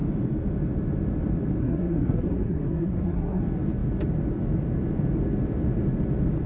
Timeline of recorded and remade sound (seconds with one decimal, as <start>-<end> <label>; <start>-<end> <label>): 0.0-1.6 recorded; 1.6-3.4 remade; 3.4-6.5 recorded